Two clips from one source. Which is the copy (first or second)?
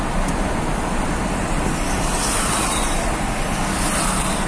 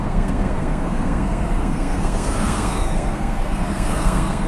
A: second